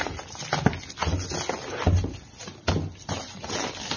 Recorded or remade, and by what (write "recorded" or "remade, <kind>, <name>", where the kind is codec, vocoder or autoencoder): recorded